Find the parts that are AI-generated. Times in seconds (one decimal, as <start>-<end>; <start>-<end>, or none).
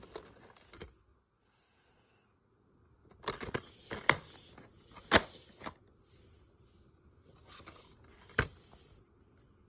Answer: none